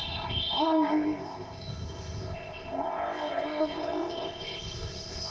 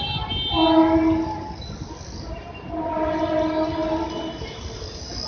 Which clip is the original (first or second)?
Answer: second